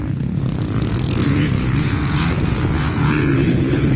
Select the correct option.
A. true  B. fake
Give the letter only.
B